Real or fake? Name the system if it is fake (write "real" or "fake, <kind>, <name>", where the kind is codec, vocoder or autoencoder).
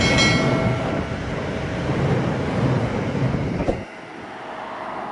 real